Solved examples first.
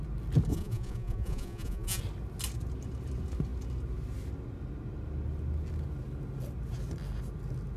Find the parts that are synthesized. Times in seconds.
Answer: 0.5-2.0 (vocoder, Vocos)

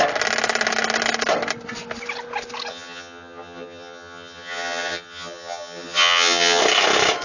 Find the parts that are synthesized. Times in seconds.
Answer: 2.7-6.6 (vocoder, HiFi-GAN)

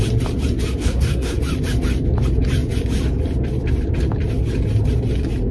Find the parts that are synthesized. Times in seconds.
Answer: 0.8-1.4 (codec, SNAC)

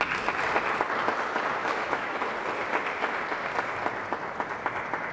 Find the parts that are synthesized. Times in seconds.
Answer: 1.6-2.3 (autoencoder, DAC-VAE)

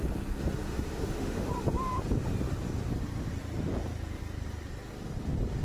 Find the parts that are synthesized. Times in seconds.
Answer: 0.7-1.5 (autoencoder, DAC-VAE)

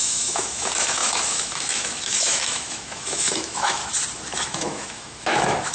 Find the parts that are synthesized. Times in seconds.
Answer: 0.0-3.8 (autoencoder, DAC-VAE); 4.3-5.7